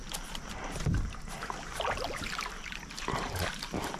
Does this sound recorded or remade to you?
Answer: recorded